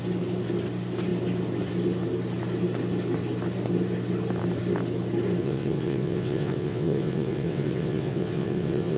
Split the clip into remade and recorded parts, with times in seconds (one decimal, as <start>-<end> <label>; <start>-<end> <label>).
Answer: 0.0-5.4 recorded; 5.4-9.0 remade